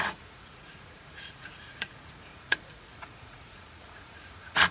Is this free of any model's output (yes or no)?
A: no